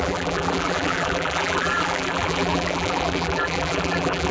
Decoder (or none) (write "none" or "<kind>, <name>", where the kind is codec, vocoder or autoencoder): vocoder, BigVGAN v2